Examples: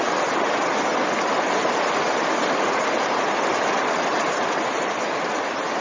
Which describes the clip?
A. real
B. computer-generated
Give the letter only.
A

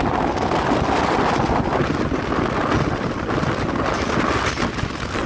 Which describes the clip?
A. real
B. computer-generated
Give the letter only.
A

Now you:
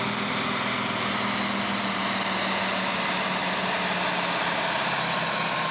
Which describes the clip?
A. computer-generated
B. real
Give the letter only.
B